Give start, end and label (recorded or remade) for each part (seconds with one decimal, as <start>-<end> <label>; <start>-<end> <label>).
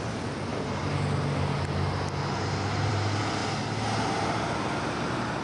0.0-5.4 recorded